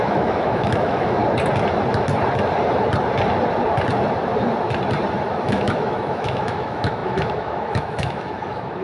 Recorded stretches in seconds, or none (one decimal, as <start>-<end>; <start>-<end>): 1.2-5.3